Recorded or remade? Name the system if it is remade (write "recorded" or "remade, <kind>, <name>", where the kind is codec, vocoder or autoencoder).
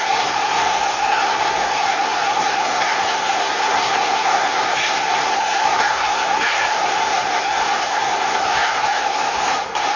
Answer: remade, codec, SNAC